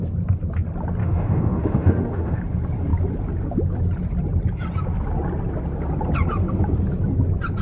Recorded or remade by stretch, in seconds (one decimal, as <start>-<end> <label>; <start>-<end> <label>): 0.0-1.0 recorded; 1.0-2.4 remade; 2.4-7.6 recorded